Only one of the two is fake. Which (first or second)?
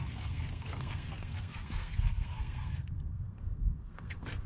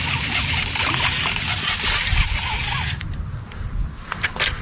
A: first